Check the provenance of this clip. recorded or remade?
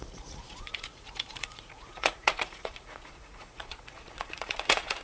remade